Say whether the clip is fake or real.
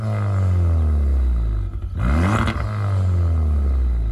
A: real